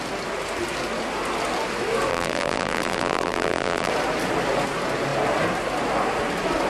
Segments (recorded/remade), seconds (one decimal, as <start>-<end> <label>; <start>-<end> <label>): 0.0-2.1 recorded; 2.1-3.9 remade; 3.9-6.7 recorded